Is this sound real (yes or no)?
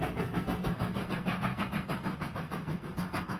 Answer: no